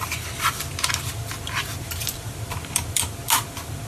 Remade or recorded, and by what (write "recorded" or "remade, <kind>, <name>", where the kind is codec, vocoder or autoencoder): recorded